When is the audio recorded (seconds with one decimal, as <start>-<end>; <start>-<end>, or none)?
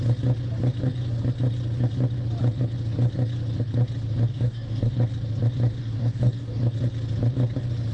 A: 0.0-4.3; 4.9-5.8; 6.6-7.9